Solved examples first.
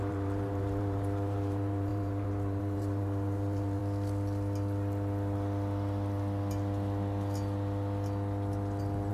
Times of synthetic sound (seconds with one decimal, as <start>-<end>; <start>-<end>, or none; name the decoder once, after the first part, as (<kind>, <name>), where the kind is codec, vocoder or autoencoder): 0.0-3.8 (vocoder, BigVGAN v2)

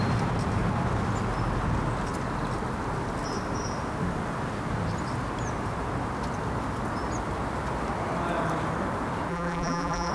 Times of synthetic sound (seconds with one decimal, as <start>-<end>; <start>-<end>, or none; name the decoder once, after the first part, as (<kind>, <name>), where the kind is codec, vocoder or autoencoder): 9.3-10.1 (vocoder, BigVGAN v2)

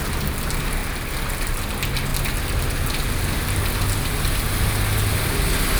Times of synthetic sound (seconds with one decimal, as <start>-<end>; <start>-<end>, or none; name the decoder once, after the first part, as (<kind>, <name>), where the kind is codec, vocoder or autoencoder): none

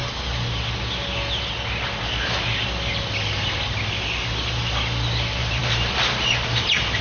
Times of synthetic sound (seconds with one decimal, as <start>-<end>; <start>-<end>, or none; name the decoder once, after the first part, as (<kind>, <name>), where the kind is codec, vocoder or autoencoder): 5.4-7.0 (vocoder, BigVGAN v2)